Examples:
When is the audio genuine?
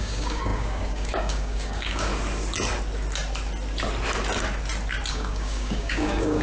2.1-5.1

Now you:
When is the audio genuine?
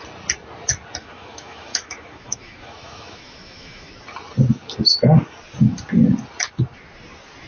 0.0-1.0; 3.9-7.5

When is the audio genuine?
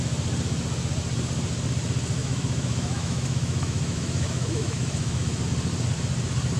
0.0-2.2; 5.4-6.6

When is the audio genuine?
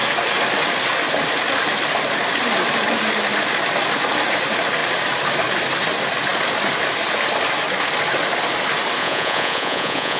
0.0-9.0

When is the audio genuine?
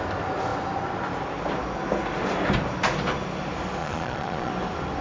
0.0-3.8; 4.5-5.0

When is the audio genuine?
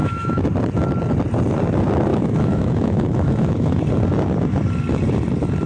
0.5-2.1; 3.8-5.7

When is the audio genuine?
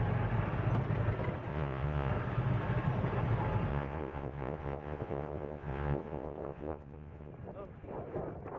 0.0-1.5; 2.1-3.7; 7.3-8.6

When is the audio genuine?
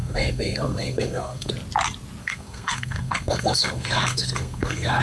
1.5-2.2